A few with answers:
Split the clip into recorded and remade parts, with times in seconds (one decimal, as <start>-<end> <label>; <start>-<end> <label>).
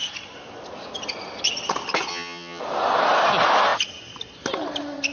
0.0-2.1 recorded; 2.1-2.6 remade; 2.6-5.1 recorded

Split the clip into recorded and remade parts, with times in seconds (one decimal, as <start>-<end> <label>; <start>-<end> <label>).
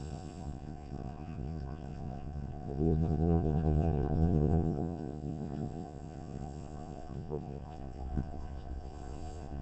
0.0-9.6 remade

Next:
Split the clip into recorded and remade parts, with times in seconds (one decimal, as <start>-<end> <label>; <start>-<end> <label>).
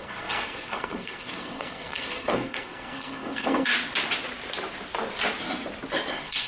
0.0-3.7 remade; 3.7-6.1 recorded; 6.1-6.5 remade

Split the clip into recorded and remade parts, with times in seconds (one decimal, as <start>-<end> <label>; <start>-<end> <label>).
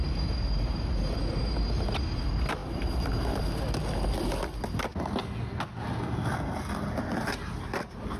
0.0-8.2 recorded